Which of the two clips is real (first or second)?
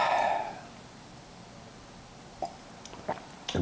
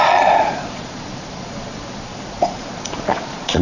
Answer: first